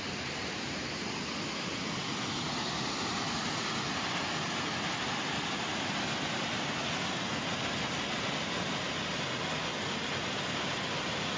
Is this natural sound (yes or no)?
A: yes